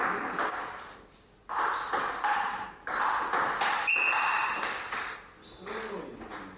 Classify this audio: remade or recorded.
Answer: recorded